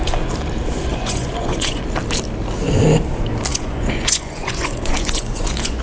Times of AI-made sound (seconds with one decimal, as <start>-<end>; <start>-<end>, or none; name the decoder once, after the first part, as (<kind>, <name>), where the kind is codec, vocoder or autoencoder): 0.9-1.8 (vocoder, Vocos); 3.5-5.8